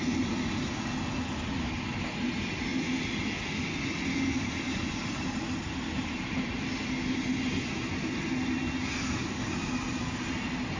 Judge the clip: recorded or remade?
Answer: recorded